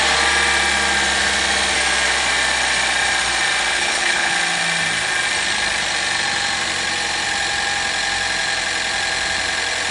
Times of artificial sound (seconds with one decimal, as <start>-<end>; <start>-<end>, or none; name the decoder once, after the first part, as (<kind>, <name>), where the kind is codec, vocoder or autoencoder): 3.7-4.3 (codec, HILCodec)